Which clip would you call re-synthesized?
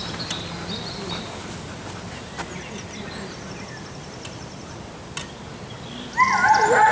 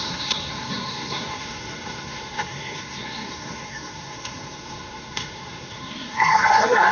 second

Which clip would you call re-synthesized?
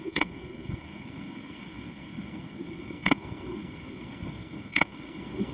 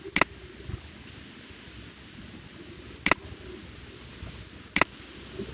first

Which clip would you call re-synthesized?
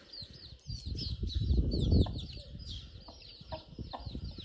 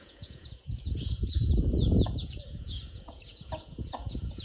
second